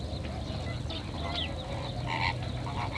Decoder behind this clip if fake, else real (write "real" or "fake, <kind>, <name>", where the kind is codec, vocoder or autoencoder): real